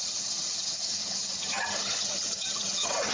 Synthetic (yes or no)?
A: yes